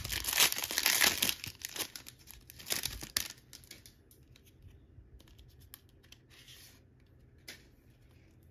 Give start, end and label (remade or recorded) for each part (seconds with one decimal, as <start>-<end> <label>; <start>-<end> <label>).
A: 0.0-8.5 recorded